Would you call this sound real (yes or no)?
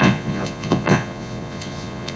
no